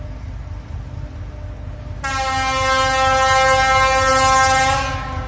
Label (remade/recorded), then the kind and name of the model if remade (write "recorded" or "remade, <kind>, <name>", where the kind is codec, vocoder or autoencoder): recorded